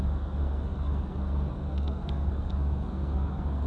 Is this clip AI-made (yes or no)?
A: yes